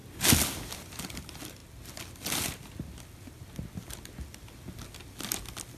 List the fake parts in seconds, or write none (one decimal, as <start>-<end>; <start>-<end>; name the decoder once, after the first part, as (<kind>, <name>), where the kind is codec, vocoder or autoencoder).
none